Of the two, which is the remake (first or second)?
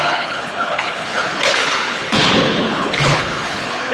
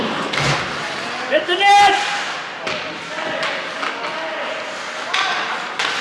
first